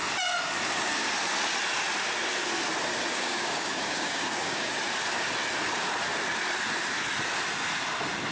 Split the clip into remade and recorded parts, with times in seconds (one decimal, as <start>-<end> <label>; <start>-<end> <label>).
0.0-3.1 recorded; 3.1-4.7 remade; 4.7-8.3 recorded